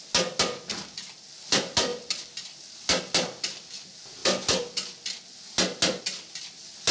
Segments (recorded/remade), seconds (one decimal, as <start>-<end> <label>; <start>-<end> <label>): 0.0-6.9 recorded